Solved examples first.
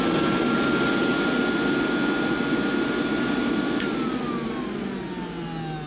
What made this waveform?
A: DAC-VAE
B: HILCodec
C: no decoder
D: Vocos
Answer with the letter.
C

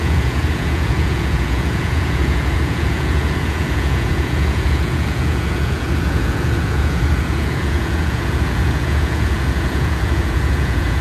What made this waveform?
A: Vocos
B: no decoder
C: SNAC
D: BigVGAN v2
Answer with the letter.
A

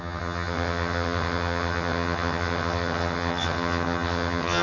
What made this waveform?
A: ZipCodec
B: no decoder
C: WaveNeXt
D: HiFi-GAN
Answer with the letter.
D